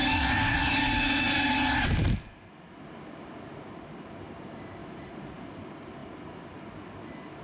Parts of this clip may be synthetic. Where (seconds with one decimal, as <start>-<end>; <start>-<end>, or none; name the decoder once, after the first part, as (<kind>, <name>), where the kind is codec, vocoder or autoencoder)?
4.8-5.4 (vocoder, BigVGAN v2)